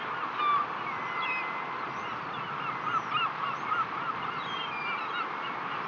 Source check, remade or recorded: recorded